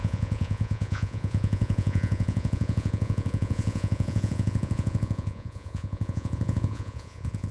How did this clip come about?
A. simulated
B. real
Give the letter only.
A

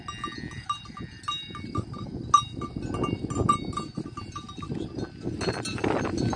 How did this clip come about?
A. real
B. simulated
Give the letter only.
A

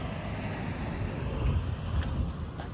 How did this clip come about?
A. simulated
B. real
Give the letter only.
B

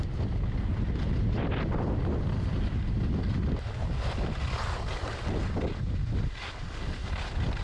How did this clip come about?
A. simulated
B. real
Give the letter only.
B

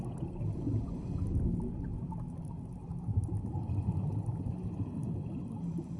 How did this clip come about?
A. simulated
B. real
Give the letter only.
B